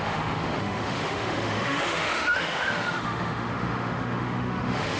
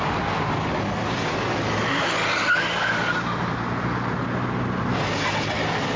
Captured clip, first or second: second